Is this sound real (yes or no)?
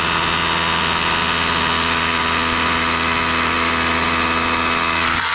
yes